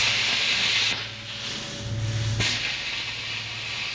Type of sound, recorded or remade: recorded